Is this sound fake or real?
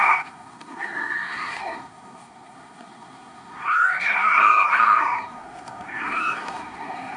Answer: fake